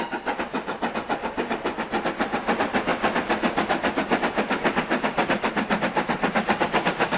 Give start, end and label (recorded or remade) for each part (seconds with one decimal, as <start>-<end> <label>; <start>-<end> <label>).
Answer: 0.0-7.2 recorded

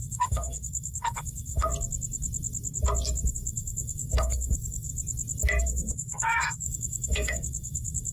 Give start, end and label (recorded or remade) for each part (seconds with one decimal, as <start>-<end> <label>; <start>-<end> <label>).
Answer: 0.0-1.7 remade; 1.7-3.3 recorded; 3.3-4.9 remade; 4.9-5.6 recorded; 5.6-8.1 remade

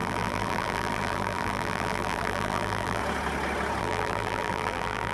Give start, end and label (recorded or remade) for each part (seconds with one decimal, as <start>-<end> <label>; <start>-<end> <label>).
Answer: 0.0-3.0 remade; 3.0-3.8 recorded; 3.8-5.1 remade

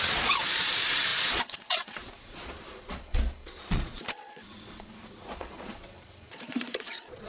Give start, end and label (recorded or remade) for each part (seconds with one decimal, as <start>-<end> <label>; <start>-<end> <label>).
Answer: 0.0-7.3 remade

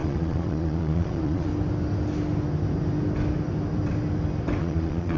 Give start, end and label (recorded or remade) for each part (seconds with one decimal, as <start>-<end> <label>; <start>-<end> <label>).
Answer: 0.0-1.5 remade; 1.5-4.6 recorded; 4.6-5.2 remade